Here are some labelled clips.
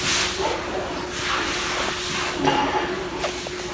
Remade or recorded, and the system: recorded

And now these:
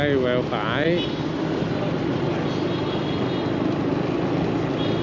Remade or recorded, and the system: recorded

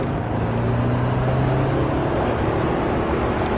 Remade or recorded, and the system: recorded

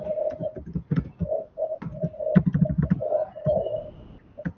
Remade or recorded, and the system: recorded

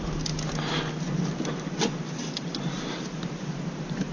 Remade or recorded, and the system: recorded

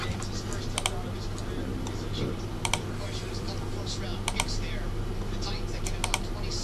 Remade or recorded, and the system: recorded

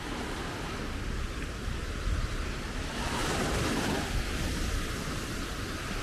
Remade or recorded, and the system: recorded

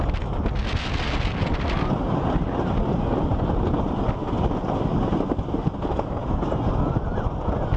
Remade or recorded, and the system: recorded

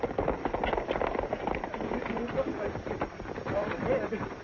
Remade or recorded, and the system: recorded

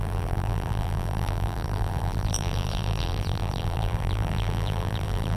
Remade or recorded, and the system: remade, vocoder, BigVGAN v2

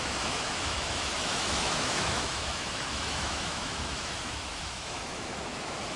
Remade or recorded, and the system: remade, autoencoder, DAC-VAE